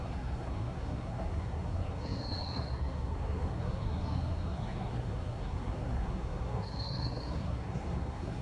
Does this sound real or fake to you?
fake